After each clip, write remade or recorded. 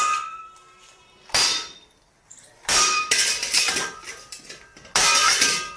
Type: remade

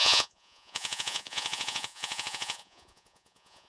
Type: remade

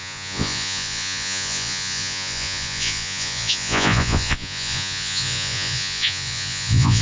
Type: remade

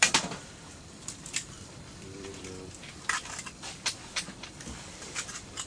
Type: remade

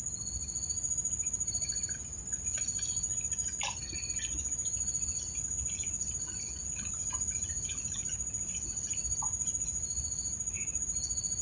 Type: recorded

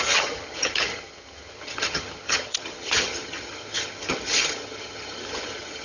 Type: remade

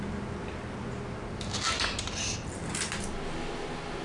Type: recorded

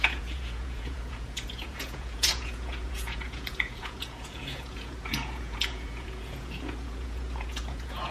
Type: remade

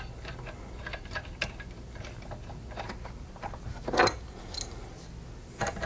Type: recorded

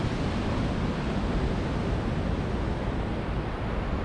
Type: recorded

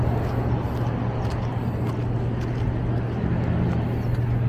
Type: recorded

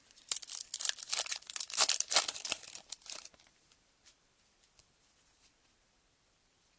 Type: remade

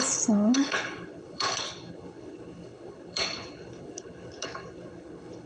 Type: remade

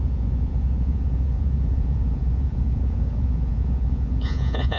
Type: remade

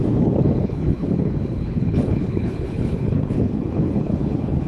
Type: remade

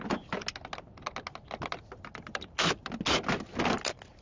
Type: recorded